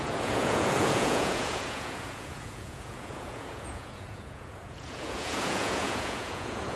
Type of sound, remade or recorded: remade